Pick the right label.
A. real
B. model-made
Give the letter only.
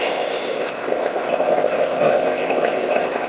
B